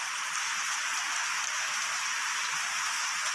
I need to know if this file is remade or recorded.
recorded